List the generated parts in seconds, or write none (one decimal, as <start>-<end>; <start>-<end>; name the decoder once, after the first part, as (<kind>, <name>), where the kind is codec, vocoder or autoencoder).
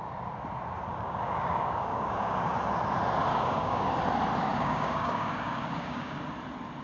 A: 0.9-2.5 (codec, DAC); 3.3-3.9; 4.5-6.2